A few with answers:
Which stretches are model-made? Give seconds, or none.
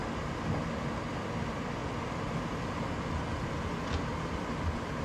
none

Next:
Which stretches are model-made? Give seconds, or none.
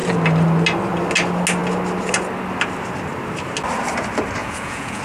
4.4-5.0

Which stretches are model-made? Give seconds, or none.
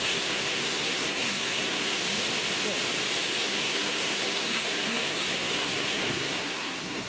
0.0-2.0; 3.4-7.1